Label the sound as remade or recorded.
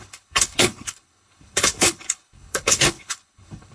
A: remade